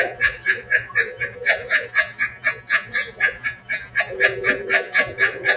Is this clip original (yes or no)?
no